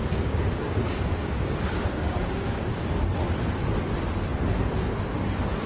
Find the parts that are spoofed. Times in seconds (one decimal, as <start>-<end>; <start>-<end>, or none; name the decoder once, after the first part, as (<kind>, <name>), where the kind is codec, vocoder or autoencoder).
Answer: 0.0-2.8 (codec, DAC)